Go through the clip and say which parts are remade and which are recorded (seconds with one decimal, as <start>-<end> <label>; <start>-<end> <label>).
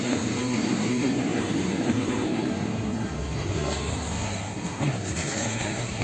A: 0.0-6.0 remade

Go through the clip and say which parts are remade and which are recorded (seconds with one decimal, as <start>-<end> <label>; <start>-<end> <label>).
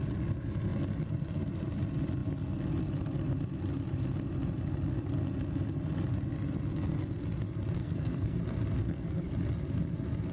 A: 0.0-7.8 recorded; 7.8-8.4 remade; 8.4-8.8 recorded; 8.8-9.3 remade; 9.3-10.3 recorded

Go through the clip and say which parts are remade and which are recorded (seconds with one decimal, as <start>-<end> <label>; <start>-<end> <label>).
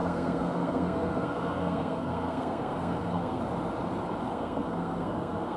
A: 0.0-3.4 remade; 3.4-4.2 recorded; 4.2-5.6 remade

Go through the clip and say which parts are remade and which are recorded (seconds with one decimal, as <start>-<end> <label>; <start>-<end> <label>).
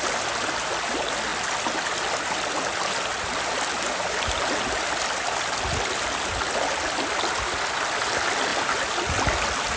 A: 0.0-9.8 recorded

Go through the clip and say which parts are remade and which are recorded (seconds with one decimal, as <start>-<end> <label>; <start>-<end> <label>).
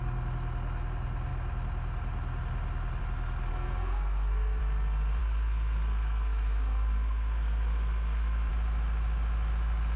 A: 0.0-3.5 recorded; 3.5-4.6 remade; 4.6-5.2 recorded; 5.2-8.5 remade; 8.5-10.0 recorded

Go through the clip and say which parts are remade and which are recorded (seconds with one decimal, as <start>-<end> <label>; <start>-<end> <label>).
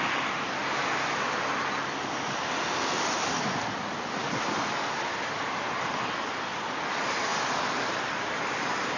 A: 0.0-9.0 recorded